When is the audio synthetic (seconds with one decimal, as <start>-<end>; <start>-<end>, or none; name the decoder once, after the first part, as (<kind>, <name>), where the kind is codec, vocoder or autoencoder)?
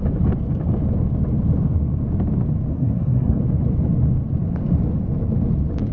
2.7-3.4 (codec, SNAC)